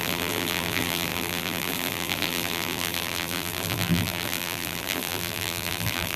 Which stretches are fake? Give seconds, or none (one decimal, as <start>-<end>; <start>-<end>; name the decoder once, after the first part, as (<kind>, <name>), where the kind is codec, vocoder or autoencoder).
0.0-6.2 (vocoder, BigVGAN v2)

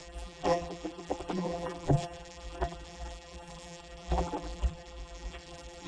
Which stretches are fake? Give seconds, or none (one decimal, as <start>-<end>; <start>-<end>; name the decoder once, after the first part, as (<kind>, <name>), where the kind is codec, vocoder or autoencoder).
0.0-5.9 (vocoder, BigVGAN v2)

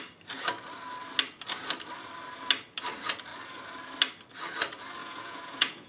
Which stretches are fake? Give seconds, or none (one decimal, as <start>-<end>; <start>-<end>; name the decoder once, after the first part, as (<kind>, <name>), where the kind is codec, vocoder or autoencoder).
5.0-5.9 (vocoder, Vocos)

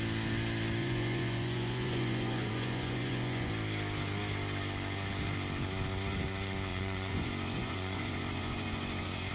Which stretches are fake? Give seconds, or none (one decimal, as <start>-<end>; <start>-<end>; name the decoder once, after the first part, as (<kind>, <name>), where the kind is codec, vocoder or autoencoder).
0.8-3.5 (vocoder, Vocos); 6.7-9.3

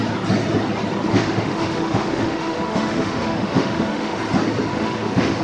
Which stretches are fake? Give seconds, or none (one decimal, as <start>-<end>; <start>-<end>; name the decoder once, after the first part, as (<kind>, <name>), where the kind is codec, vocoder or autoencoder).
1.1-4.2 (autoencoder, DAC-VAE); 4.7-5.4

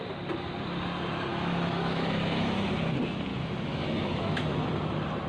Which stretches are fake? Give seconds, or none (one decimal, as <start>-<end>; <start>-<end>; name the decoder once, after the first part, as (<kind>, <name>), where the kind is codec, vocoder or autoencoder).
1.3-2.7 (autoencoder, DAC-VAE); 3.3-4.7

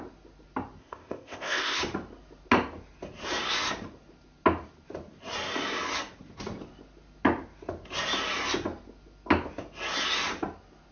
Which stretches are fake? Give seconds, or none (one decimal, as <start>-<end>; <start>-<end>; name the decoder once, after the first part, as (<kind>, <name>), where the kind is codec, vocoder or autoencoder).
0.8-1.8 (codec, ZipCodec)